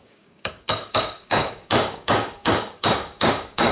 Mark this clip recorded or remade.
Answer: remade